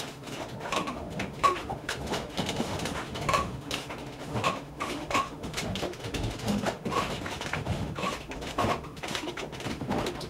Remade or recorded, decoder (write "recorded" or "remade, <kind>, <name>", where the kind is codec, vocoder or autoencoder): remade, autoencoder, DAC-VAE